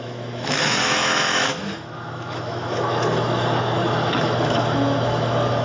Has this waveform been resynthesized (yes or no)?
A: yes